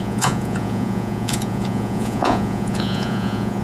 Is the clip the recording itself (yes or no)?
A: no